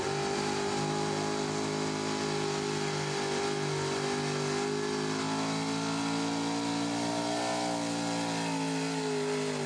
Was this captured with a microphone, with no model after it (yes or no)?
yes